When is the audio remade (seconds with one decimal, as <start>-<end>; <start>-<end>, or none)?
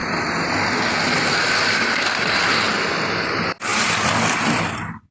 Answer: 1.4-2.7; 3.7-5.1